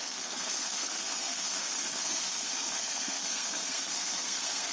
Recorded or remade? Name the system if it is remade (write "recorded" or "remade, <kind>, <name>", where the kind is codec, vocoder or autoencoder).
remade, codec, SNAC